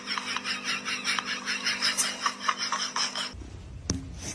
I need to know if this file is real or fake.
real